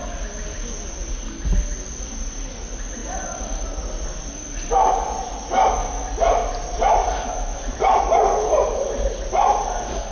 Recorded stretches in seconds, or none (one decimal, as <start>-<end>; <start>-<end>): 0.0-7.0; 8.0-10.1